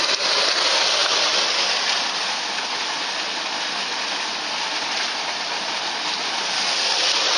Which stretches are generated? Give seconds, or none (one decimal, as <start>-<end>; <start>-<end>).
none